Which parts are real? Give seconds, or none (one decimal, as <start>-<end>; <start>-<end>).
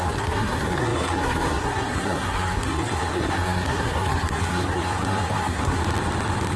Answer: 5.8-6.6